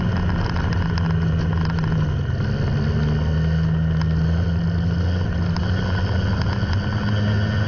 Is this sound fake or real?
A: real